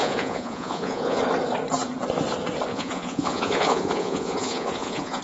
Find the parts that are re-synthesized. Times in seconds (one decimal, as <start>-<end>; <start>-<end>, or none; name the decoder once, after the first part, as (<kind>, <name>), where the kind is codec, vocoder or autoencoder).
0.0-1.2 (vocoder, Vocos); 2.7-5.2